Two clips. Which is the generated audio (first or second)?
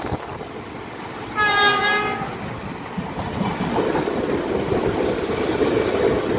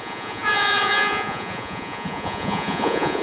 second